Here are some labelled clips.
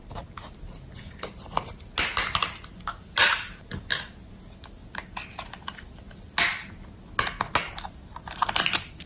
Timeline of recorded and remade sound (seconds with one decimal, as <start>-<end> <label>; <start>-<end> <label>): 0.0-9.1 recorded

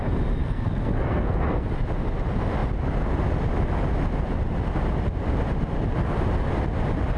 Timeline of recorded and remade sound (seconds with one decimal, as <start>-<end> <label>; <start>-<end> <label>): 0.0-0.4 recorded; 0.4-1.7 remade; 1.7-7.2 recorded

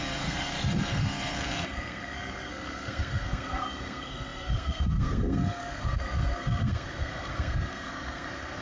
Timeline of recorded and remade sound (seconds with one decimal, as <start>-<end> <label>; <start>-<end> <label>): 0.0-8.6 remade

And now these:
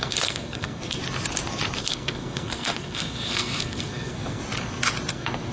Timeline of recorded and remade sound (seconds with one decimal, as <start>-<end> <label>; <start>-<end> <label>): 0.0-1.0 remade; 1.0-1.8 recorded; 1.8-4.4 remade; 4.4-5.1 recorded; 5.1-5.5 remade

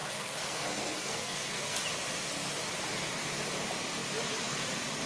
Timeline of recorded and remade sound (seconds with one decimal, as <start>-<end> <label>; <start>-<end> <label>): 0.0-1.8 remade; 1.8-5.1 recorded

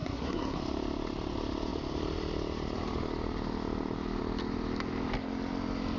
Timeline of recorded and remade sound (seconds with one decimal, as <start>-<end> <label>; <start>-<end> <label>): 0.0-0.6 remade; 0.6-6.0 recorded